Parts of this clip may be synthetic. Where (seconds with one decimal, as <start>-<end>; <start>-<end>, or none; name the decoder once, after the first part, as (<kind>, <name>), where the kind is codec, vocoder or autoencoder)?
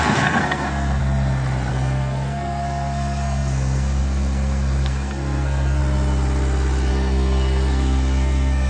0.0-1.0 (codec, SNAC); 1.7-5.8; 6.9-8.7